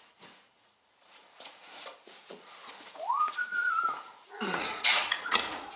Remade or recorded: remade